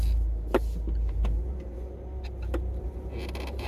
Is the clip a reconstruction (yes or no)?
no